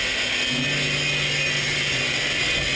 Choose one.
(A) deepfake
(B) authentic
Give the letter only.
B